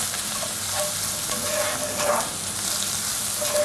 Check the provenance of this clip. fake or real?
real